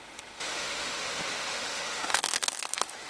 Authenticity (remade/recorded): remade